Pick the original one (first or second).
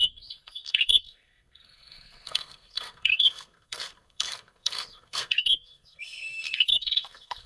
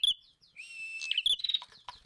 second